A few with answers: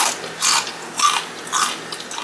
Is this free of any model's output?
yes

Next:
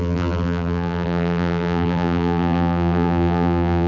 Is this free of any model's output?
no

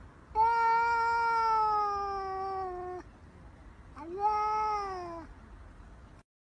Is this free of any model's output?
yes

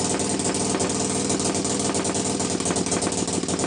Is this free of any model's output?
yes